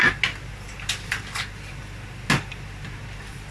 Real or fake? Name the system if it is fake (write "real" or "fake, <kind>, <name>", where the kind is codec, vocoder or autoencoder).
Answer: real